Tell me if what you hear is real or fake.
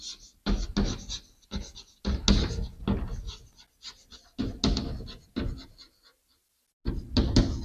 real